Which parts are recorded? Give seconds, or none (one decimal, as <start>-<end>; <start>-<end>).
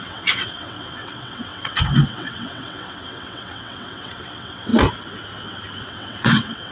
4.7-5.9